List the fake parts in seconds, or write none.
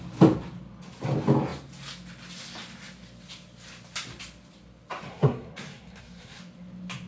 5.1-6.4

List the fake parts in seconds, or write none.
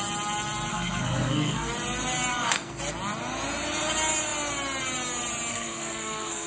0.7-1.7; 2.3-2.8; 5.5-6.5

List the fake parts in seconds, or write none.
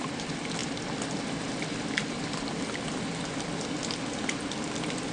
none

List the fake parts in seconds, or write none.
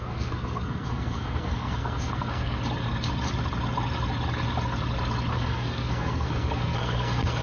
0.0-2.6; 5.3-7.4